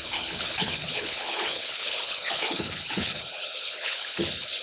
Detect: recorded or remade remade